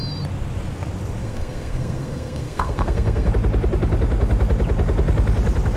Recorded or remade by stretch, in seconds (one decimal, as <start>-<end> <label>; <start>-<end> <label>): 0.0-1.2 recorded; 1.2-3.3 remade; 3.3-5.8 recorded